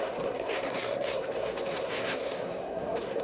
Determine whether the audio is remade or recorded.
remade